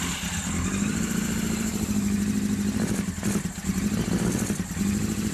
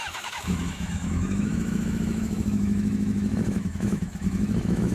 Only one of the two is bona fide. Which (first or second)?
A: first